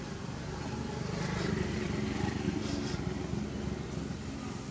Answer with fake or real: real